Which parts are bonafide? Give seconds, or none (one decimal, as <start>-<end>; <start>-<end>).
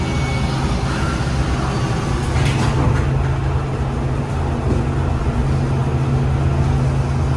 0.0-7.4